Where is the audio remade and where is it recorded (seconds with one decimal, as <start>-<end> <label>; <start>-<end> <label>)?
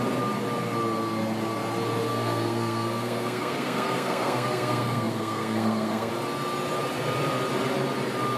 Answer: 0.0-2.1 recorded; 2.1-6.1 remade; 6.1-8.4 recorded